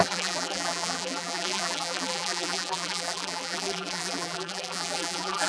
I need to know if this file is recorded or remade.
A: remade